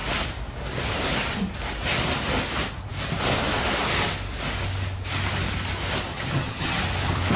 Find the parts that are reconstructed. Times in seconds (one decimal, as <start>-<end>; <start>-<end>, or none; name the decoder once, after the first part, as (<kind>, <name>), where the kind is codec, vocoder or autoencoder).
6.1-6.8 (vocoder, HiFi-GAN)

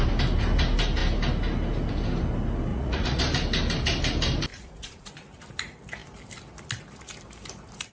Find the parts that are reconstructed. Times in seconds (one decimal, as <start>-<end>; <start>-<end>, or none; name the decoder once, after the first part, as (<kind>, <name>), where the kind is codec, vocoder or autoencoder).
2.7-3.2 (vocoder, Vocos); 4.5-5.1

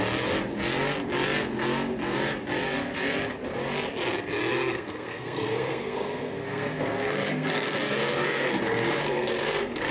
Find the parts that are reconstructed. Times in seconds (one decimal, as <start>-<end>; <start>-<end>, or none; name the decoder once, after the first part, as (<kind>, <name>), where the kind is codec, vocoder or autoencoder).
4.5-9.9 (codec, SNAC)

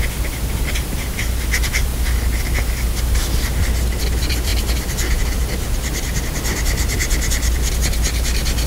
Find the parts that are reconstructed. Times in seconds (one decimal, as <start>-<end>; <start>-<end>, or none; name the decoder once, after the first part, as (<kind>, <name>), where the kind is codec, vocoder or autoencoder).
none

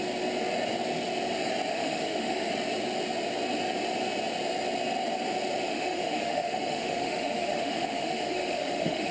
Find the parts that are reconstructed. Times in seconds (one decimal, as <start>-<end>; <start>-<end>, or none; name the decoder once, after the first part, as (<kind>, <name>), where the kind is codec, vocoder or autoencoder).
1.7-2.5 (autoencoder, DAC-VAE); 5.7-9.1

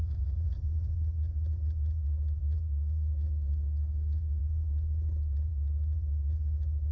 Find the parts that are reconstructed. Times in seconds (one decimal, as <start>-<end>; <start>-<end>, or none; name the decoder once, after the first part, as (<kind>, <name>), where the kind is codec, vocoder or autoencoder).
0.0-0.7 (codec, SNAC); 2.4-4.4

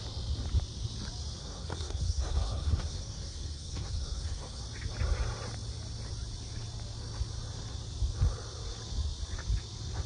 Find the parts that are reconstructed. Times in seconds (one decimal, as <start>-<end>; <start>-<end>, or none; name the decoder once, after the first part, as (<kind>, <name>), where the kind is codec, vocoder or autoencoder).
1.4-4.6 (codec, SNAC)